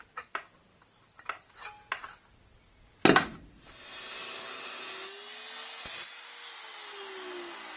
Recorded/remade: recorded